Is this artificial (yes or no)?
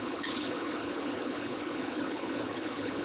yes